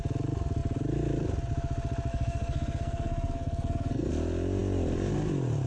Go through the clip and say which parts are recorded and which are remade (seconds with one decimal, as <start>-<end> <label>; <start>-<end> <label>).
0.0-2.1 recorded; 2.1-4.1 remade; 4.1-5.7 recorded